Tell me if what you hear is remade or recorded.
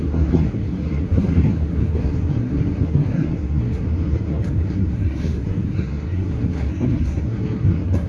remade